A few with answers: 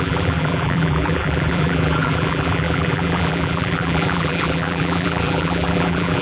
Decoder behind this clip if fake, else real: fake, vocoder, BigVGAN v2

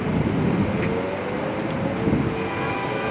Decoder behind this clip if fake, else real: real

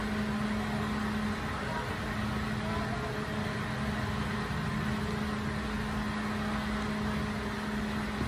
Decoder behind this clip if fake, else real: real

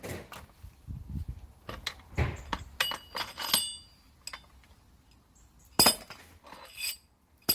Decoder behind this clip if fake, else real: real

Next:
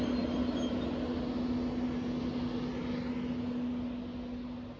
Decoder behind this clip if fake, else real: real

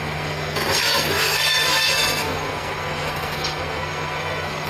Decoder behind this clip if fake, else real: fake, codec, SNAC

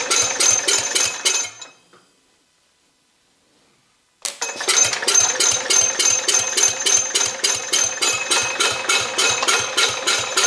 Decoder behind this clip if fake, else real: real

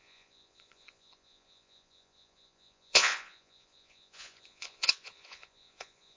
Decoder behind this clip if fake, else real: fake, vocoder, Vocos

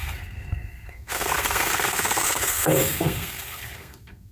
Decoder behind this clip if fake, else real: fake, codec, SNAC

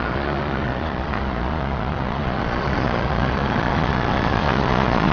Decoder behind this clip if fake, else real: fake, vocoder, Vocos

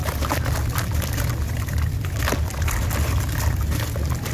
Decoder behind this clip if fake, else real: real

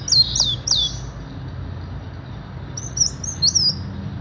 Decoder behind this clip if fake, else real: real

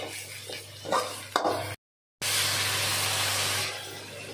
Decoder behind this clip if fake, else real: real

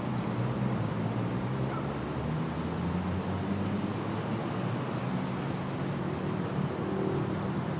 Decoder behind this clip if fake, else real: real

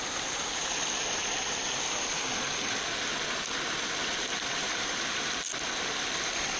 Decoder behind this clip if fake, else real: real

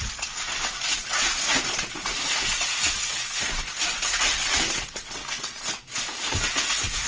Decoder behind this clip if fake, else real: fake, vocoder, Vocos